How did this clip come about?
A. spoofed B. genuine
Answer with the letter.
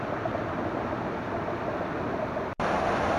B